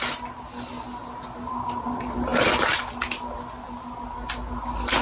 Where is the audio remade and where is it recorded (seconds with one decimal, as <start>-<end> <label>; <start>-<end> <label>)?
0.0-5.0 recorded